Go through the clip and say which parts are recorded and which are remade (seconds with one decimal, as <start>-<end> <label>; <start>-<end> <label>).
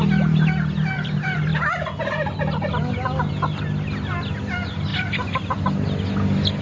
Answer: 0.0-6.6 recorded